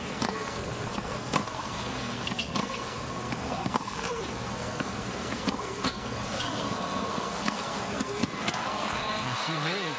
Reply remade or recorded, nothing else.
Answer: remade